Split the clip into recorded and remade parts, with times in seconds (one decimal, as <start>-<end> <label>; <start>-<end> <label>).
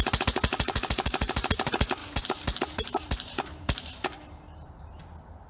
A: 0.0-0.5 recorded; 0.5-1.5 remade; 1.5-2.0 recorded; 2.0-5.0 remade; 5.0-5.5 recorded